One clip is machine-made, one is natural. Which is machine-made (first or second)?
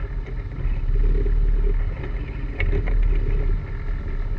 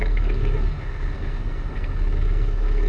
second